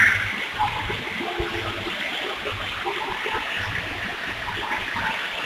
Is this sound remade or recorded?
recorded